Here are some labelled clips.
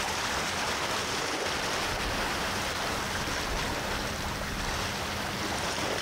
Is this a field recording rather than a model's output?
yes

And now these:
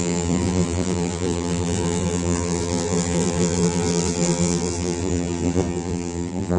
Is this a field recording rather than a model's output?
no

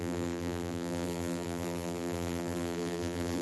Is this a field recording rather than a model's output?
no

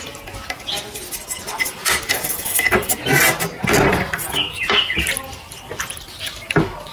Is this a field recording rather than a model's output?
yes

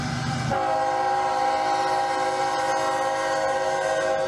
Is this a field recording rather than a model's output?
yes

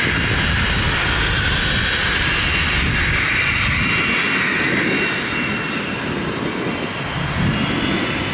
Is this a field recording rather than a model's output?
yes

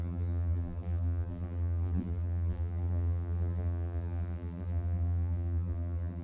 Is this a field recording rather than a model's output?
no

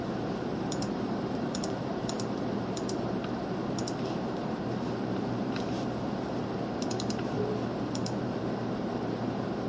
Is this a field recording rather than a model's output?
no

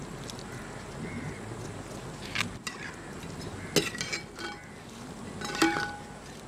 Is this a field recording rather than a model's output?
yes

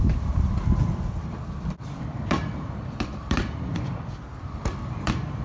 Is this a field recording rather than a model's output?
no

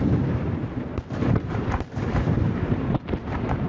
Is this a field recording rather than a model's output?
no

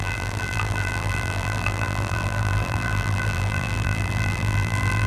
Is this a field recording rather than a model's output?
no